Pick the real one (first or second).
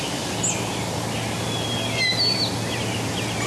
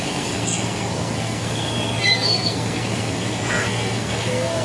first